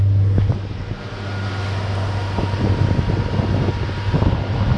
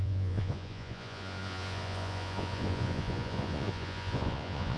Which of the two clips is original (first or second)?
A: first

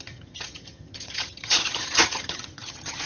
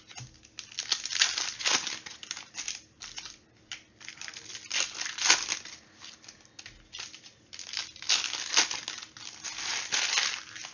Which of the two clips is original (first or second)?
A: second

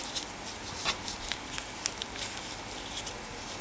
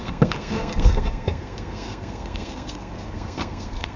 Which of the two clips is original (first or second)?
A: first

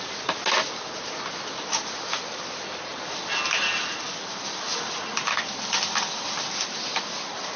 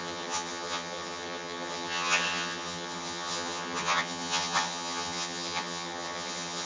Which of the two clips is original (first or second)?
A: first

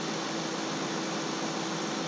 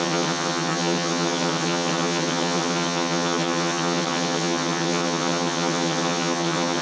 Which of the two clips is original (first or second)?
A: first